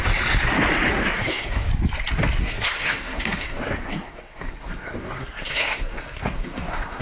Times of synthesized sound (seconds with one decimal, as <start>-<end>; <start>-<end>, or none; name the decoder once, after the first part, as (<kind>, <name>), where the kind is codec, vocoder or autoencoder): 0.9-1.7 (codec, SNAC); 2.4-7.0